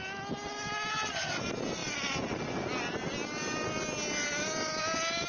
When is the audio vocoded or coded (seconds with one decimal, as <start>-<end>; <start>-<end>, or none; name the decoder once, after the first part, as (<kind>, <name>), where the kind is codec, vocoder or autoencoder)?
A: 0.9-1.4 (vocoder, HiFi-GAN)